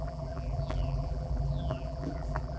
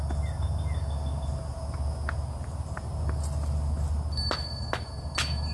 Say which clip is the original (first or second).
second